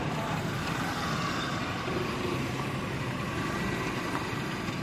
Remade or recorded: remade